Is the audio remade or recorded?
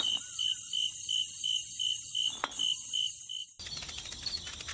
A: recorded